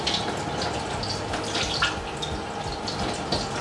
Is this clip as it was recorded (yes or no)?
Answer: yes